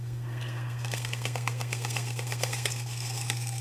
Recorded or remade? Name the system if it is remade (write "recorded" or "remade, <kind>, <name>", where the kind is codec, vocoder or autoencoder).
remade, codec, SNAC